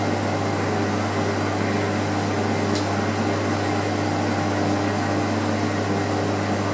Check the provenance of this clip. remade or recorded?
recorded